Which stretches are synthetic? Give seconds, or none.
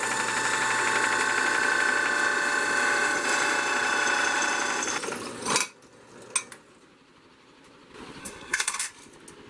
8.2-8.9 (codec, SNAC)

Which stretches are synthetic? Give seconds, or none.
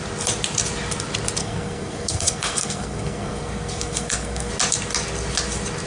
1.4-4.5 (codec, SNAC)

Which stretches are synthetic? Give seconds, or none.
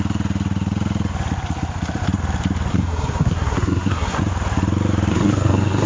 2.7-4.2 (codec, SNAC); 5.1-5.9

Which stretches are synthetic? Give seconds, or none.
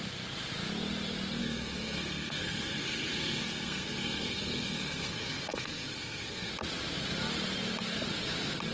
1.4-6.5 (codec, SNAC)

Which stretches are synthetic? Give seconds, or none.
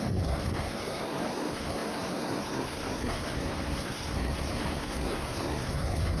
0.0-6.2 (codec, SNAC)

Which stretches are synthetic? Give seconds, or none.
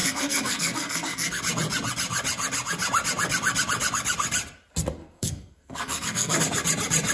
0.0-1.4 (codec, SNAC); 5.0-6.4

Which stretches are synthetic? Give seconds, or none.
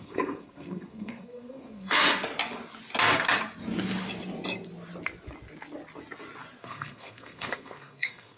0.0-2.0 (codec, SNAC); 6.6-8.4